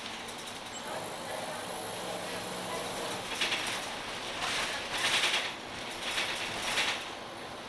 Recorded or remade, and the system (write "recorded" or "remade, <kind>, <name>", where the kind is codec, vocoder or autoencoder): recorded